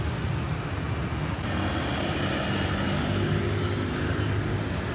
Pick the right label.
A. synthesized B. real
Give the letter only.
B